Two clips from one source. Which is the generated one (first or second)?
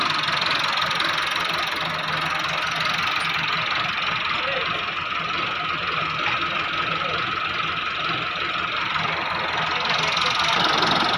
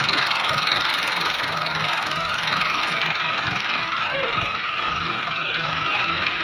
second